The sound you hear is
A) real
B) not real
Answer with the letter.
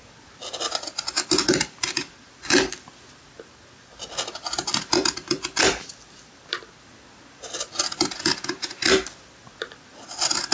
A